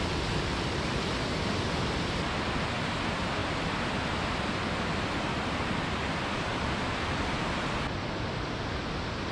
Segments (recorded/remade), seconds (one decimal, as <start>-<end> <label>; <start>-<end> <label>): 0.0-9.3 recorded